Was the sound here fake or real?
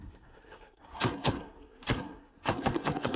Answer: fake